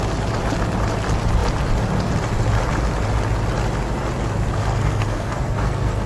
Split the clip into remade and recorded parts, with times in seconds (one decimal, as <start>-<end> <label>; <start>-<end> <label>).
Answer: 0.0-4.6 recorded; 4.6-6.1 remade